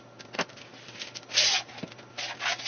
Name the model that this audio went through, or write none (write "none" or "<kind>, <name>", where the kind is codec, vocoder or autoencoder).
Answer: none